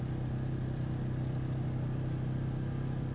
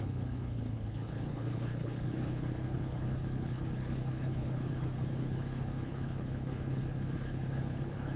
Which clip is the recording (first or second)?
first